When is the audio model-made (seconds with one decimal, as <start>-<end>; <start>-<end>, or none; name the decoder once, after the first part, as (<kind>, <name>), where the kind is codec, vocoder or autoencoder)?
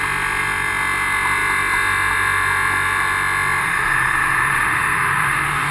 3.6-5.7 (autoencoder, DAC-VAE)